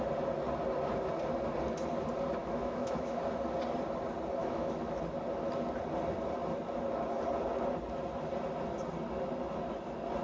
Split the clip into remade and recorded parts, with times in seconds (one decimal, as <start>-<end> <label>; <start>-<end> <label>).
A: 0.0-2.4 recorded; 2.4-3.2 remade; 3.2-4.4 recorded; 4.4-5.0 remade; 5.0-10.2 recorded